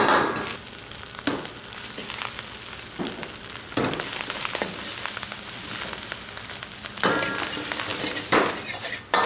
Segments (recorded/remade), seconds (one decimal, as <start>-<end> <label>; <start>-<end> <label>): 0.0-9.3 recorded